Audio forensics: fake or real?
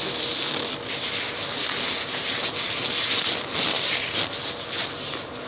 real